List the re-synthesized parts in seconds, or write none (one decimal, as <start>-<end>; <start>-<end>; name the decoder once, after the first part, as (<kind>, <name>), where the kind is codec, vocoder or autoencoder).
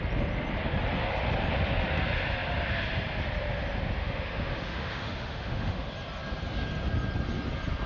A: 4.0-5.9 (autoencoder, DAC-VAE)